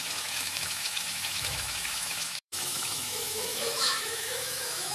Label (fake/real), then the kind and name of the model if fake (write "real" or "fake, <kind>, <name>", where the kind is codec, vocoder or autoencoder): fake, autoencoder, DAC-VAE